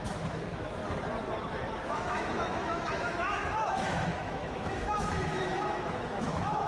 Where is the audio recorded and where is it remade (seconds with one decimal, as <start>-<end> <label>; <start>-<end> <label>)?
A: 0.0-0.8 remade; 0.8-1.8 recorded; 1.8-6.7 remade

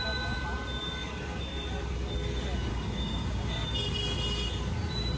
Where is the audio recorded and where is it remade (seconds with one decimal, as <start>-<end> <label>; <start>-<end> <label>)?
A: 0.0-2.7 recorded; 2.7-3.5 remade; 3.5-5.2 recorded

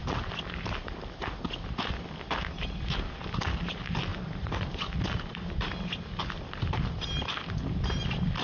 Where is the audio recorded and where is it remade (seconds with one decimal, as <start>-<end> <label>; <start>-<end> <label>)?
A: 0.0-4.1 recorded; 4.1-4.7 remade; 4.7-8.4 recorded

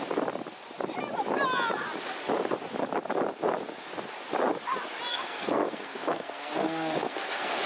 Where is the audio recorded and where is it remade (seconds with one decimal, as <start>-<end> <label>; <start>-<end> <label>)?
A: 0.0-5.1 recorded; 5.1-7.7 remade

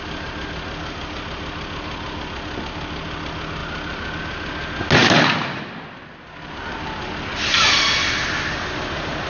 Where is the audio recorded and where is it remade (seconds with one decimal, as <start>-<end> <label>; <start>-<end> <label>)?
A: 0.0-9.3 recorded

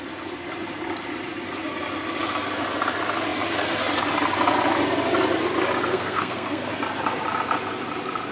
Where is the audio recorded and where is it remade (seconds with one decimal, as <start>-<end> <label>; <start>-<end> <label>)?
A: 0.0-5.9 recorded; 5.9-6.7 remade; 6.7-8.3 recorded

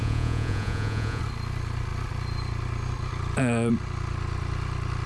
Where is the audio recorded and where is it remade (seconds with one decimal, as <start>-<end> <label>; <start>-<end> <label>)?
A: 0.0-1.2 remade; 1.2-5.1 recorded

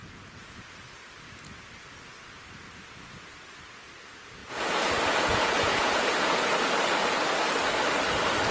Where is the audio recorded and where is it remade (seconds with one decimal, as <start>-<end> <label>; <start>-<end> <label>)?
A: 0.0-0.6 remade; 0.6-4.4 recorded; 4.4-6.5 remade; 6.5-8.5 recorded